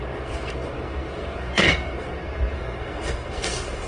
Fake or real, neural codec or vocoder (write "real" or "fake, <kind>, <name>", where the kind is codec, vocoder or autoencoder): fake, codec, SNAC